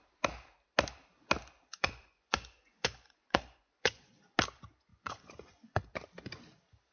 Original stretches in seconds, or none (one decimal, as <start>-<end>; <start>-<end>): 0.0-1.7; 4.1-4.9; 5.8-6.9